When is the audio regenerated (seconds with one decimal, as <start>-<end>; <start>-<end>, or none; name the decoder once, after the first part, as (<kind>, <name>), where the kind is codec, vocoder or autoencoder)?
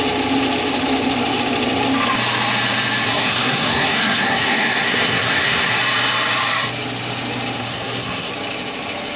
3.1-5.8 (codec, SNAC); 7.6-8.3